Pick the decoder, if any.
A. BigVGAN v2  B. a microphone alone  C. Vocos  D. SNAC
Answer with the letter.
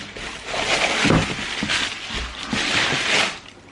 B